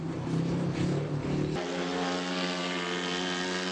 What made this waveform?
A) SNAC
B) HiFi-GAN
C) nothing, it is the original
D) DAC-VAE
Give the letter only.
C